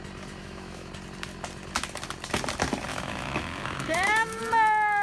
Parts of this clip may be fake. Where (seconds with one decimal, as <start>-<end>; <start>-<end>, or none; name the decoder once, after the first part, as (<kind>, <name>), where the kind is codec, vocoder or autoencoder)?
0.4-0.9 (autoencoder, DAC-VAE); 2.9-4.4